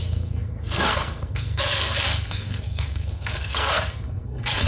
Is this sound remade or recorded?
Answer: remade